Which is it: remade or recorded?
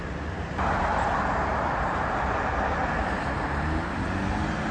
recorded